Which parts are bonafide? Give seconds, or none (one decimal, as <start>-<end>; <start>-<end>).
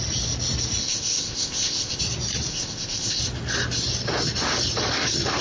0.0-0.8; 2.0-2.5; 3.2-5.4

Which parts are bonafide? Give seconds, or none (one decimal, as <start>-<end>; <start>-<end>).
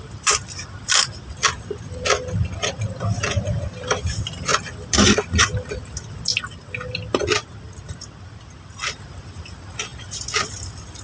0.0-11.0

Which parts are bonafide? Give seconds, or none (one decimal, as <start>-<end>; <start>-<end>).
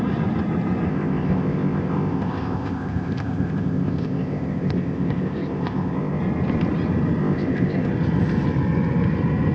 0.0-0.9; 6.2-7.2; 7.9-9.5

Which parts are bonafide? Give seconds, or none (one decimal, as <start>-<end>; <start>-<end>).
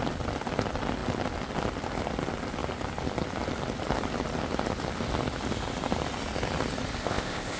0.0-7.0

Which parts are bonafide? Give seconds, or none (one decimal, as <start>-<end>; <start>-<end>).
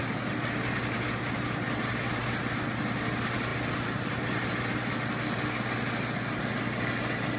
0.0-7.4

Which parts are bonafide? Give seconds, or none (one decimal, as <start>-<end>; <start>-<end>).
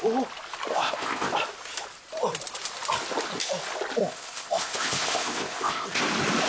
0.0-0.7; 1.3-4.0; 6.0-6.5